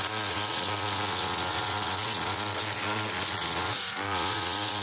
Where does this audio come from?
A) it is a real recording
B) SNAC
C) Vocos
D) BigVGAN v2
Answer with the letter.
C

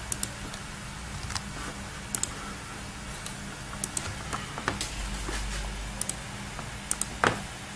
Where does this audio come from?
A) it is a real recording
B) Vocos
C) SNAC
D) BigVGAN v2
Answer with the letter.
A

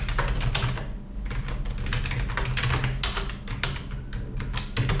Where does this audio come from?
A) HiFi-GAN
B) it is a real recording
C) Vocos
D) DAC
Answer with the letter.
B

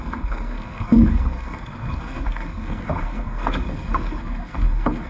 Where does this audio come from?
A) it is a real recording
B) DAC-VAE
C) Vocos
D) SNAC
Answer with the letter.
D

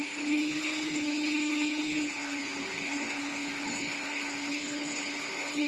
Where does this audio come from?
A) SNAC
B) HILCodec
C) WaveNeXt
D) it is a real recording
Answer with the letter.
B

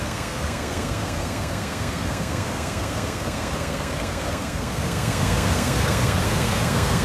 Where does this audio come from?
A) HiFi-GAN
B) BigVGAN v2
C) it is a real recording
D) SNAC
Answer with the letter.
D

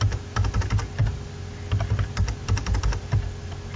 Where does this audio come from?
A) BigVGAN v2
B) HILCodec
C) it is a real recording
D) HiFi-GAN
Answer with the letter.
C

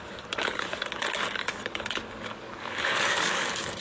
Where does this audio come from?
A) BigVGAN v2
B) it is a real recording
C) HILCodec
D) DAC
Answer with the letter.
D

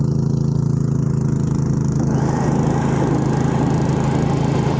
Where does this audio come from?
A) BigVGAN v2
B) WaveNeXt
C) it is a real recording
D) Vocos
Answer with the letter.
C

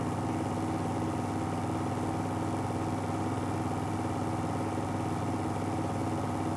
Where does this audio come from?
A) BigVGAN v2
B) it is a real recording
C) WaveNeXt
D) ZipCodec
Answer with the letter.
B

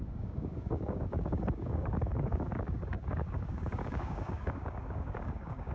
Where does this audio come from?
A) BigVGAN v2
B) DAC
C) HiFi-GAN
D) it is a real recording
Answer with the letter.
B